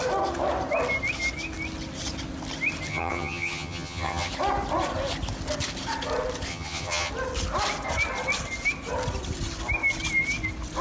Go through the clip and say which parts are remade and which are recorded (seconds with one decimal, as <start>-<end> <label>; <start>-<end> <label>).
0.0-2.9 recorded; 2.9-4.3 remade; 4.3-6.5 recorded; 6.5-7.1 remade; 7.1-10.8 recorded